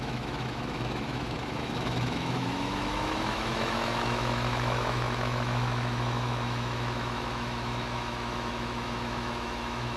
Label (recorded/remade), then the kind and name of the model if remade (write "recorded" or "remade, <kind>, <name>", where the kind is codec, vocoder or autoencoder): remade, autoencoder, DAC-VAE